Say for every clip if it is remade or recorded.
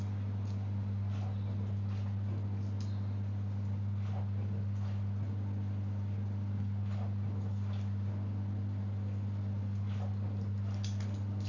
recorded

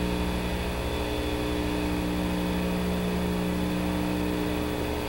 recorded